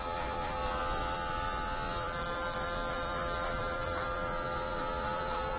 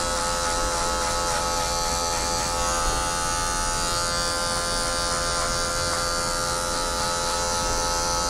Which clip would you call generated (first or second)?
first